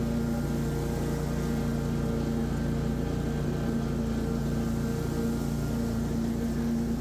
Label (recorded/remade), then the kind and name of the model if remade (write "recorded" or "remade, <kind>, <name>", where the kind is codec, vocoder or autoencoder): recorded